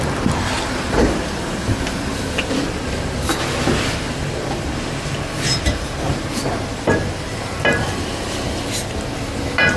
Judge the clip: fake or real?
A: real